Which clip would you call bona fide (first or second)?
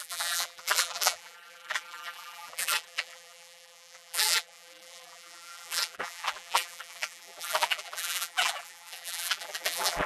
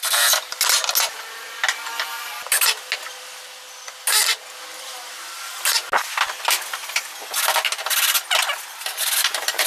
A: second